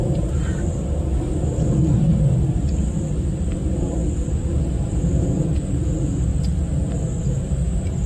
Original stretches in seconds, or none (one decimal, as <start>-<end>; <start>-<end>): 0.4-4.5; 6.3-7.2